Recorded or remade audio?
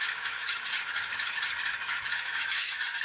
remade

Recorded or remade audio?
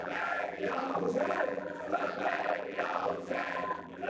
remade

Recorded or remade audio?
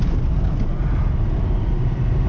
recorded